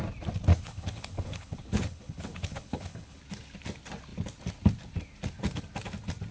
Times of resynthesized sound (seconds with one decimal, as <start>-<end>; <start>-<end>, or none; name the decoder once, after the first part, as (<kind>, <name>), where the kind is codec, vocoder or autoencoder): 0.5-3.2 (codec, HILCodec)